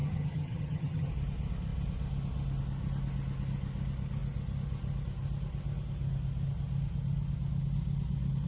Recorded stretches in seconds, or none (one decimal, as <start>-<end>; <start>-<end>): 1.1-8.5